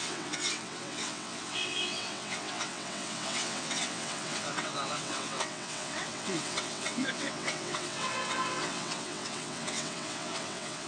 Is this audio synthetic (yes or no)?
yes